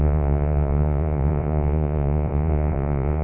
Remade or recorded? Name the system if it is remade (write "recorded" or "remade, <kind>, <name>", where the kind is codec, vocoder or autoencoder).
remade, vocoder, Vocos